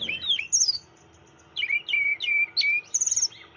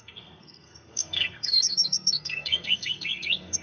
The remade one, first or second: second